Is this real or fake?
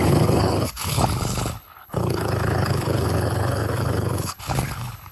fake